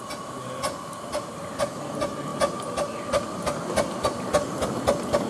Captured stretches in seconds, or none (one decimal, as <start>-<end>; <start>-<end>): 0.0-5.3